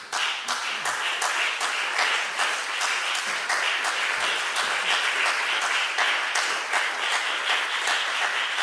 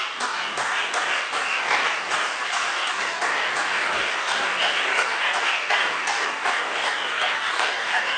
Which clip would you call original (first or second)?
first